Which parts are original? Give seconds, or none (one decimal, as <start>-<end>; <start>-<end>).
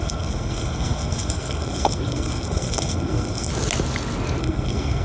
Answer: 3.5-4.4